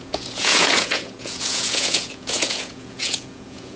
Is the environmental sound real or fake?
fake